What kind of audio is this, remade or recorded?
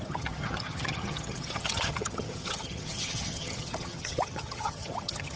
remade